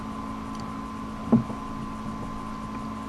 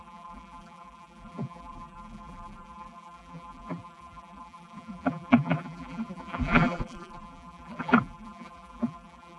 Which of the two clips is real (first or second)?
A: first